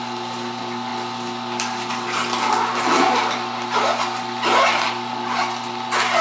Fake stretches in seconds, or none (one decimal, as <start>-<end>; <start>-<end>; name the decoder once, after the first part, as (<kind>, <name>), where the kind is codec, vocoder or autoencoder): none

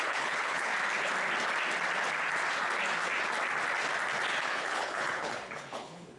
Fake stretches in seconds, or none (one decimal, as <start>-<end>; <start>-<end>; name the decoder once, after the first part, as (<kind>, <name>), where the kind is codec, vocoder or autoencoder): 0.0-0.7 (codec, HILCodec); 4.4-6.2